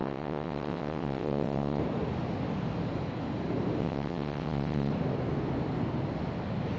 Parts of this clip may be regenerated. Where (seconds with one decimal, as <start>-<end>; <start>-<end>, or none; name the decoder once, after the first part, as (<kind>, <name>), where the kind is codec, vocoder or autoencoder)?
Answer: 0.0-1.8 (vocoder, WaveNeXt); 3.8-4.9